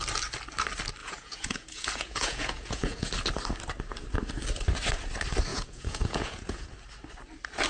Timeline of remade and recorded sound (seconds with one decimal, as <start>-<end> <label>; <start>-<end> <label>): 0.0-1.0 recorded; 1.0-3.1 remade; 3.1-5.5 recorded; 5.5-6.7 remade; 6.7-7.7 recorded